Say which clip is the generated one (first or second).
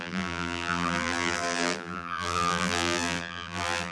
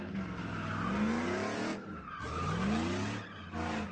first